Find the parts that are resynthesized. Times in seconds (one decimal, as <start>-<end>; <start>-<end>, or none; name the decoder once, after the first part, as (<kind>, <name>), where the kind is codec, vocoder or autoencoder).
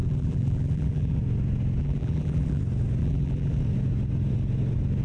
0.0-1.2 (vocoder, BigVGAN v2); 1.8-2.6; 3.0-3.6